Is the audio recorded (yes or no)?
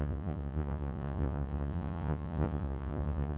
no